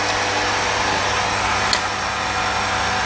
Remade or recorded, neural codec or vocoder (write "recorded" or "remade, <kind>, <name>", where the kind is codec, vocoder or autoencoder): recorded